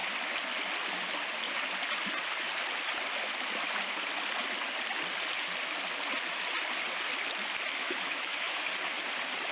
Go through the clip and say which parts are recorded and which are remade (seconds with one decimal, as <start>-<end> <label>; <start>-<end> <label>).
0.0-7.8 recorded; 7.8-8.7 remade; 8.7-9.5 recorded